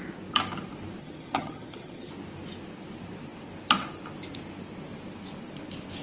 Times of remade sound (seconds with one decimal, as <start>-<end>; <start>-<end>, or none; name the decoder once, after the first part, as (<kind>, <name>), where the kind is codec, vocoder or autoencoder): 1.0-2.1 (vocoder, HiFi-GAN)